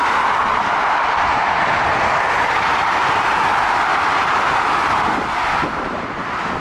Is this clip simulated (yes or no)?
no